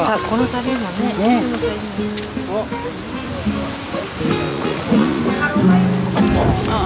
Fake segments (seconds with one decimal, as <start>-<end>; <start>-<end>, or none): 4.5-5.2